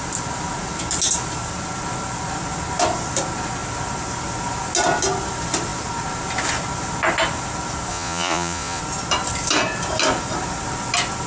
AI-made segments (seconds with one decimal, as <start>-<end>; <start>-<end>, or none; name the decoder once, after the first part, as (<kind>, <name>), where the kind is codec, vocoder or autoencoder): 7.9-8.8 (vocoder, Vocos)